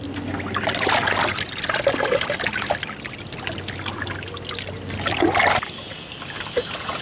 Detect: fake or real real